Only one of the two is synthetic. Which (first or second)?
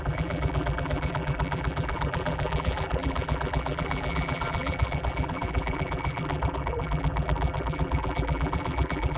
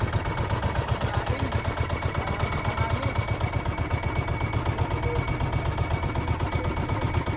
first